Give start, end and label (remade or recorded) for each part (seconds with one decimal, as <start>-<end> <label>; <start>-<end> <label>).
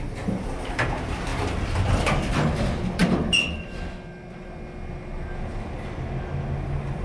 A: 0.0-7.0 recorded